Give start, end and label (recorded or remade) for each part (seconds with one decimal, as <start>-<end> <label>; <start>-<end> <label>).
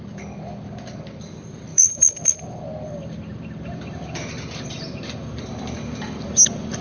0.0-6.8 recorded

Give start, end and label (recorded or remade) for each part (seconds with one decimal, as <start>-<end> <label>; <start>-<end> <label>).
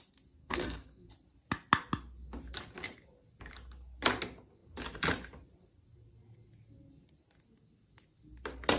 0.0-0.4 recorded; 0.4-1.1 remade; 1.1-8.8 recorded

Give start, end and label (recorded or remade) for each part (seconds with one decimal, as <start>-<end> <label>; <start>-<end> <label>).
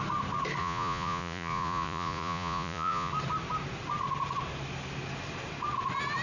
0.0-0.6 recorded; 0.6-3.1 remade; 3.1-6.2 recorded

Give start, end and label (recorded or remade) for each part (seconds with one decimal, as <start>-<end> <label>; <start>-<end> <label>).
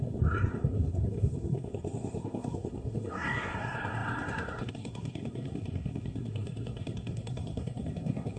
0.0-8.4 remade